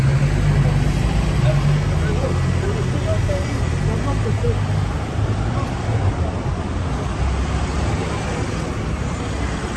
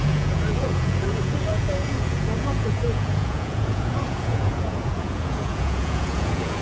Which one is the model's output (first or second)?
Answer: second